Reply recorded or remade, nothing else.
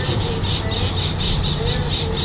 recorded